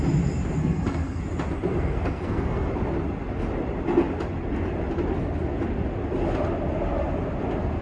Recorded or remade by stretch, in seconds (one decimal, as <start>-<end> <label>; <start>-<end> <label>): 0.0-0.6 recorded; 0.6-1.2 remade; 1.2-1.7 recorded; 1.7-2.7 remade; 2.7-7.8 recorded